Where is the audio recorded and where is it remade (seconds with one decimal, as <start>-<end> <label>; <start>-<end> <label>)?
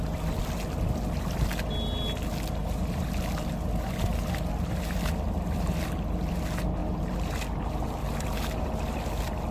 0.0-9.5 recorded